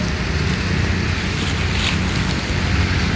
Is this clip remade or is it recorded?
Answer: recorded